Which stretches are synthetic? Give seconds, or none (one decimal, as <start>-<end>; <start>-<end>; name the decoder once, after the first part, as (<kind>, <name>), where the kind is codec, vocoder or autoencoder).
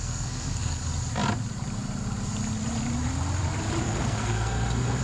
0.0-0.8 (codec, SNAC); 3.8-5.0